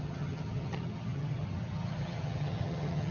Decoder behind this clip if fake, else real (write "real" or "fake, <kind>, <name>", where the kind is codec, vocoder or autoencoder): fake, vocoder, HiFi-GAN